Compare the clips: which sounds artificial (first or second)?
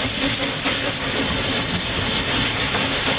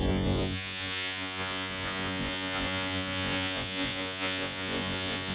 second